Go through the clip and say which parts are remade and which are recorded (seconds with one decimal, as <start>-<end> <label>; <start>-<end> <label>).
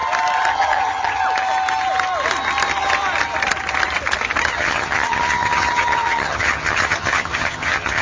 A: 0.0-0.5 recorded; 0.5-1.2 remade; 1.2-4.5 recorded; 4.5-8.0 remade